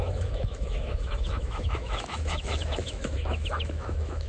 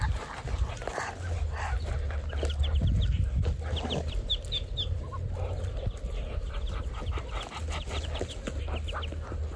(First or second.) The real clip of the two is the second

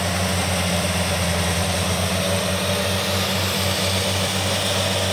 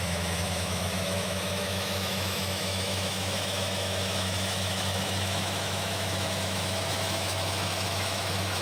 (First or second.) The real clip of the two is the first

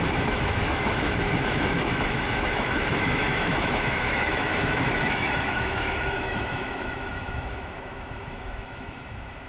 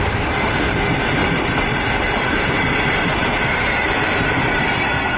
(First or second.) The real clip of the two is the second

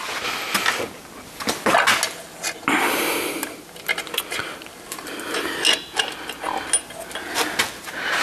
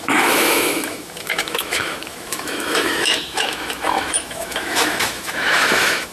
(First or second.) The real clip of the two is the first